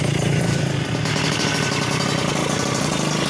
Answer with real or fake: real